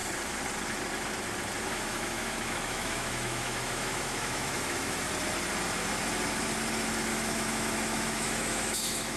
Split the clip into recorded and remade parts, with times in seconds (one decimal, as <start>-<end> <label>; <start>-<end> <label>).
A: 0.0-1.7 recorded; 1.7-5.1 remade; 5.1-7.1 recorded; 7.1-9.2 remade